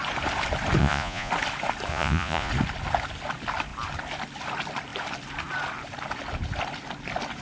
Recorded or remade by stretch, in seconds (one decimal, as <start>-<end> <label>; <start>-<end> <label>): 0.0-0.8 recorded; 0.8-1.3 remade; 1.3-1.9 recorded; 1.9-2.5 remade; 2.5-7.4 recorded